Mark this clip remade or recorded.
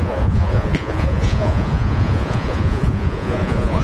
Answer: remade